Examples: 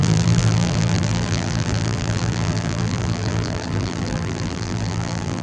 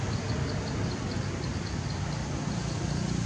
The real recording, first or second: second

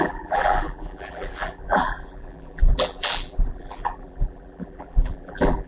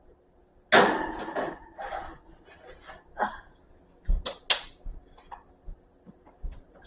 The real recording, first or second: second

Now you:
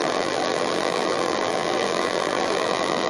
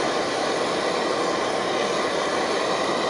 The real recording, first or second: second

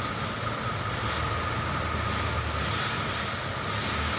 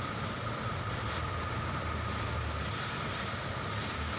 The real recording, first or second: first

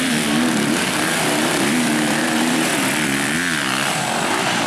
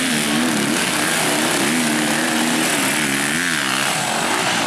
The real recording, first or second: second